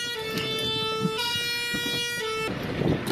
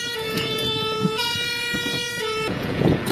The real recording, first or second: first